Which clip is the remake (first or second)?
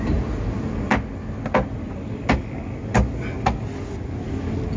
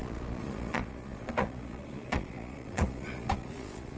second